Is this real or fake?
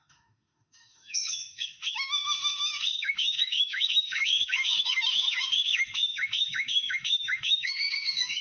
fake